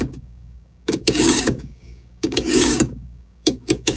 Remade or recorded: remade